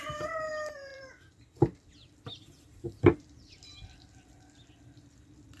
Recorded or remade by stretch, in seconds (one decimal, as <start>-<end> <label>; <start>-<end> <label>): 0.0-0.9 recorded; 0.9-4.3 remade; 4.3-5.6 recorded